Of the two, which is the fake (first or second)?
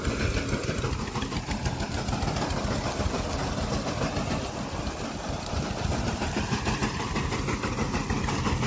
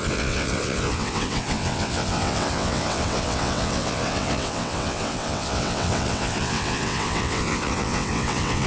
second